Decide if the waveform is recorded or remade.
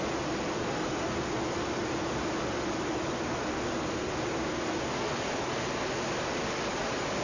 recorded